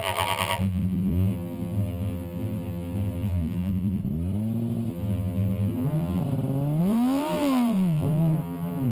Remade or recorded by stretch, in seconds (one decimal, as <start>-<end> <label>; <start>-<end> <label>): 0.0-4.0 remade; 4.0-4.9 recorded; 4.9-6.2 remade; 6.2-6.8 recorded; 6.8-8.9 remade